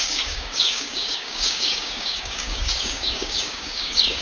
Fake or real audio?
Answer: fake